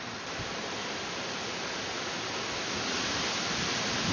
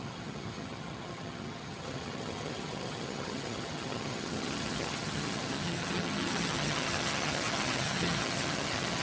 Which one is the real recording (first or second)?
first